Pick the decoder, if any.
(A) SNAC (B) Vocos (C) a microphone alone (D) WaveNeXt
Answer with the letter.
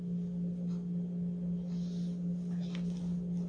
C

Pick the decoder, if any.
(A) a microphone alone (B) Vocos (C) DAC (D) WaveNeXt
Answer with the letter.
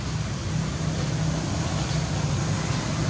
A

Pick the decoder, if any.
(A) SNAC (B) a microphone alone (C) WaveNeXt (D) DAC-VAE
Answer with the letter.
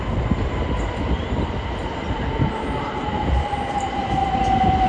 B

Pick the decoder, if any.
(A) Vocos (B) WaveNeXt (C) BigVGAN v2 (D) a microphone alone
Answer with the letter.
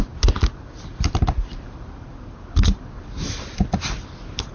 D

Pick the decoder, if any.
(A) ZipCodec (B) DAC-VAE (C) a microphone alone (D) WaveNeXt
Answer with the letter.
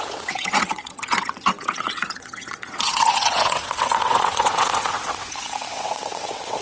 D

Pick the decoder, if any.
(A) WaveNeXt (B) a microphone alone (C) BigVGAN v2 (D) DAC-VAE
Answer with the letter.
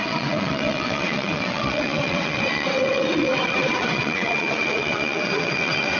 A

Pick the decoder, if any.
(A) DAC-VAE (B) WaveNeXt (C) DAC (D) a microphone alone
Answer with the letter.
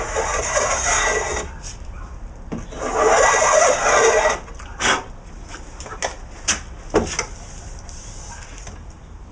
D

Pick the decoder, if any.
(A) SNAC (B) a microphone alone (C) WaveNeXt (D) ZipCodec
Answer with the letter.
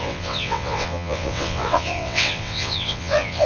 C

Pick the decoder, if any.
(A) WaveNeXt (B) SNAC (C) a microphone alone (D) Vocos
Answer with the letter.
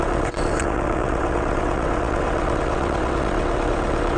A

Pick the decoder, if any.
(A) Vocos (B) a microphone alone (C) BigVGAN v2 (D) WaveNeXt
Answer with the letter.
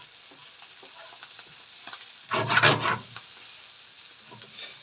B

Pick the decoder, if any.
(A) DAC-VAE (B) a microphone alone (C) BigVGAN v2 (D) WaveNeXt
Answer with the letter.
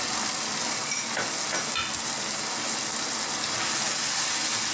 B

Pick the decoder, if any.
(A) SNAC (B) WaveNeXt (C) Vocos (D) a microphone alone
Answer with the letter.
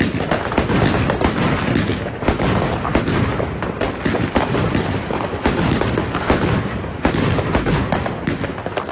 D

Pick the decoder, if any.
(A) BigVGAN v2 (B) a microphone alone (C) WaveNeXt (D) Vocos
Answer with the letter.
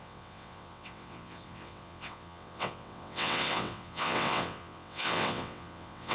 C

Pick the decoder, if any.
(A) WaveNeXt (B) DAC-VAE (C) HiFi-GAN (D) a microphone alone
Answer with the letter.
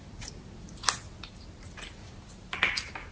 D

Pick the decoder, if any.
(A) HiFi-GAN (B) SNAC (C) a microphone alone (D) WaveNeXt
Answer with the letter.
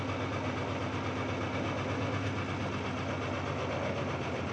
C